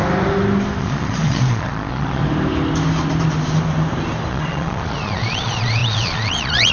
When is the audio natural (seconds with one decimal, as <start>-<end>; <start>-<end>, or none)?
0.0-0.8; 2.2-4.3

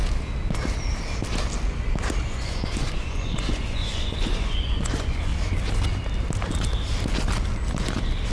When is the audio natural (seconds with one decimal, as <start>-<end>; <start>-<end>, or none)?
0.0-2.2; 5.3-8.3

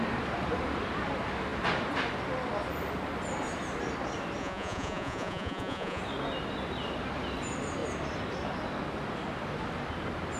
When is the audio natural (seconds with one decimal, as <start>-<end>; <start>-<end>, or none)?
0.0-4.4; 6.0-10.4